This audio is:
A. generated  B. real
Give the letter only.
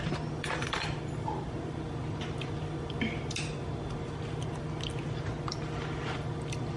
A